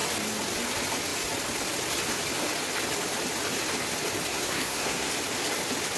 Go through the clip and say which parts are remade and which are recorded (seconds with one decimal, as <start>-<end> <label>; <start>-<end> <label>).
0.0-4.3 recorded; 4.3-5.1 remade; 5.1-6.0 recorded

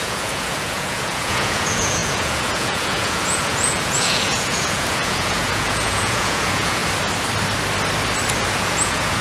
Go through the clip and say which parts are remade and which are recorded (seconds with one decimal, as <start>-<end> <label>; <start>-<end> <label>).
0.0-6.8 remade; 6.8-8.5 recorded; 8.5-9.2 remade

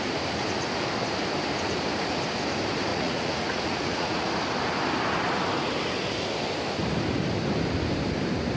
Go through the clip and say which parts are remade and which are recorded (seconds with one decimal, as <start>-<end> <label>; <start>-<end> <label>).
0.0-2.9 recorded; 2.9-4.3 remade; 4.3-8.6 recorded

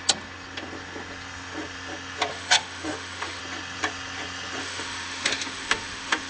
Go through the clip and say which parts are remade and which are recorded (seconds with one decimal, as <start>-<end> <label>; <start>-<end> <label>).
0.0-2.3 recorded; 2.3-3.4 remade; 3.4-4.6 recorded; 4.6-6.3 remade

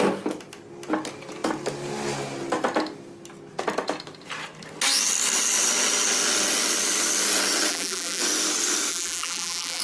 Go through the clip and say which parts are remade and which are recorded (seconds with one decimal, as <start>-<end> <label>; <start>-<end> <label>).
0.0-7.7 recorded; 7.7-8.2 remade; 8.2-8.9 recorded; 8.9-9.8 remade